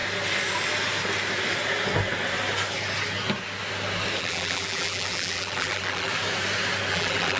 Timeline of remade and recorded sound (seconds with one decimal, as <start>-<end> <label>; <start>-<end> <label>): 0.0-4.2 recorded; 4.2-6.1 remade; 6.1-6.9 recorded; 6.9-7.4 remade